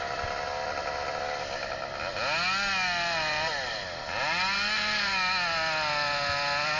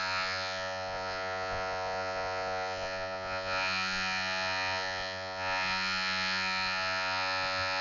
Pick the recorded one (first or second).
first